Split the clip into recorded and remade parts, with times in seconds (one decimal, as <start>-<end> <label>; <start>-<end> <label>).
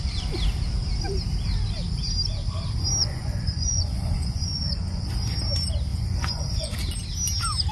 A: 0.0-3.0 recorded; 3.0-5.1 remade; 5.1-5.9 recorded; 5.9-6.7 remade; 6.7-7.7 recorded